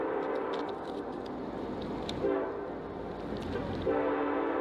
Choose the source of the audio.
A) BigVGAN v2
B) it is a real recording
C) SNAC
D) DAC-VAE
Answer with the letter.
B